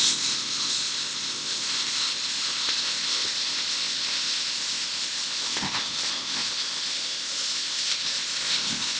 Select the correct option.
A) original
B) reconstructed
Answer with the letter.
B